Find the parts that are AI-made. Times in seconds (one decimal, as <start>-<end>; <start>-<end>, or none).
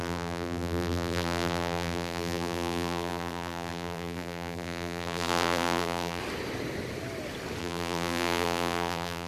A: 0.0-6.2; 7.6-9.3